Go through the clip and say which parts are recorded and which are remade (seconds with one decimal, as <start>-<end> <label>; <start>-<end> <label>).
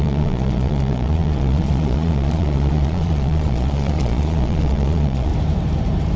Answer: 0.0-5.3 remade; 5.3-6.2 recorded